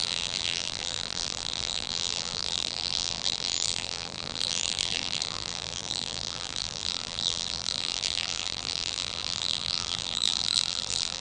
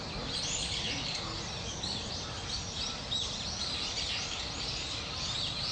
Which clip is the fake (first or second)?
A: first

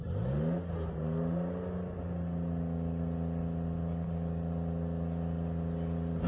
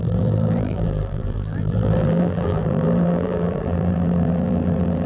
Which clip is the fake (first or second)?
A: second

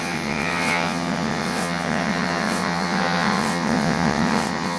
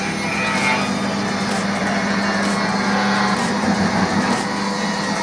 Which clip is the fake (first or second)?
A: first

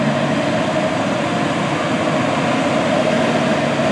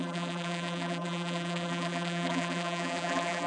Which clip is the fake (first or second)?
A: second